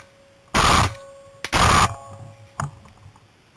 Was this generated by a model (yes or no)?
no